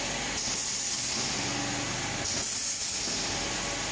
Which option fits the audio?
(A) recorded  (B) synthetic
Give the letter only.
A